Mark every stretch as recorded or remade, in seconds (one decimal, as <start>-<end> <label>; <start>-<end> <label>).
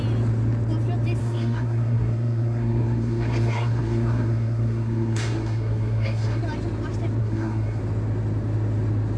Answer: 0.0-1.2 recorded; 1.2-6.4 remade; 6.4-7.2 recorded; 7.2-7.8 remade; 7.8-9.2 recorded